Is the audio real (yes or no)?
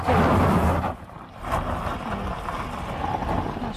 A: yes